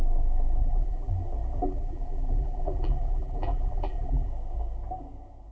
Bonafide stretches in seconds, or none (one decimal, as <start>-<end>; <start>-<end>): 0.0-0.6; 1.1-1.6; 4.3-5.5